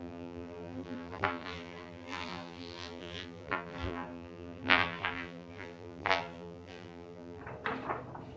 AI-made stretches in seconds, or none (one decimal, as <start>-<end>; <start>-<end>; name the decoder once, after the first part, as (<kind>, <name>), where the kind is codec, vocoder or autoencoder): 0.0-7.4 (vocoder, BigVGAN v2)